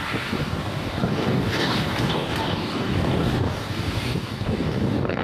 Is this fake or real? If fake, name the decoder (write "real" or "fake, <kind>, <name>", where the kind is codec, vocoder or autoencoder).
fake, codec, DAC